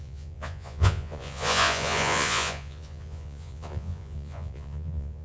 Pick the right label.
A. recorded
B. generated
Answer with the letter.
B